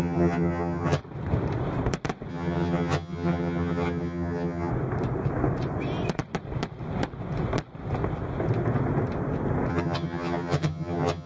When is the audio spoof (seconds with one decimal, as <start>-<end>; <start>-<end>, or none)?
0.0-1.0; 2.3-4.7; 9.7-11.3